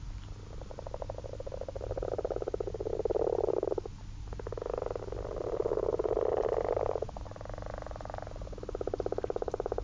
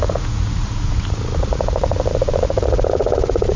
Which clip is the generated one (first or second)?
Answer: second